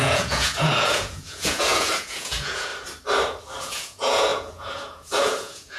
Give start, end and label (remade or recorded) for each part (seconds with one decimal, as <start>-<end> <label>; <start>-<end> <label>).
0.0-2.7 remade; 2.7-3.6 recorded; 3.6-5.8 remade